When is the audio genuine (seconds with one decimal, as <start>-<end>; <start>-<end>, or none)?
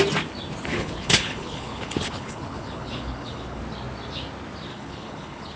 0.0-0.7; 3.6-4.7